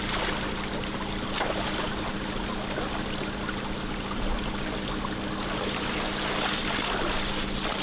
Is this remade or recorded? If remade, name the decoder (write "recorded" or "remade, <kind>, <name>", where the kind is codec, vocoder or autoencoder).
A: recorded